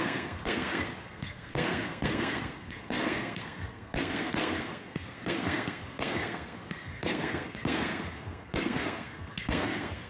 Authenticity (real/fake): fake